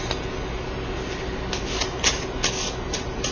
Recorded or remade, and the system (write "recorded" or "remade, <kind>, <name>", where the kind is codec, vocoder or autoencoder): recorded